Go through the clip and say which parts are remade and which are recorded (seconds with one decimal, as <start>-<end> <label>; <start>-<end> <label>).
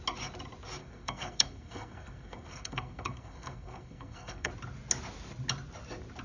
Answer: 0.0-0.8 recorded; 0.8-4.5 remade; 4.5-6.2 recorded